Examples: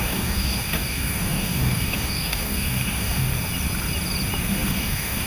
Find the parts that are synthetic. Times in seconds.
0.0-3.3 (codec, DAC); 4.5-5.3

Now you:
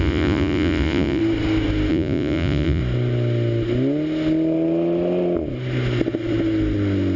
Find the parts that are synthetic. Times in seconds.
0.0-1.2 (vocoder, Vocos); 1.9-2.8